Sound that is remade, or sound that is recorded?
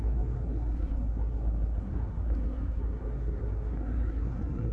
remade